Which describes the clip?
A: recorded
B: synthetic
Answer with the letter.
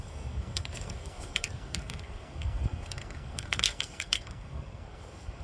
B